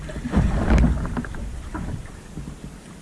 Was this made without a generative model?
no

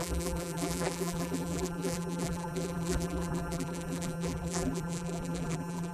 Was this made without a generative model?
no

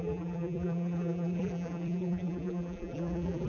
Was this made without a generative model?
no